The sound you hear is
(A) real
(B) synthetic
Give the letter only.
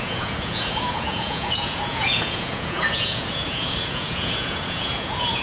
B